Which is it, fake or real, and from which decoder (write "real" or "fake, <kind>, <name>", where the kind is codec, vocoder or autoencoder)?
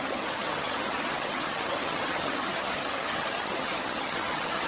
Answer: fake, vocoder, HiFi-GAN